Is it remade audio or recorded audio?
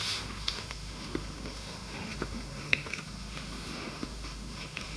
remade